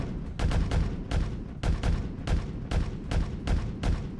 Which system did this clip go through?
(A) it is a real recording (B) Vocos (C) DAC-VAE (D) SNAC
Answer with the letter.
A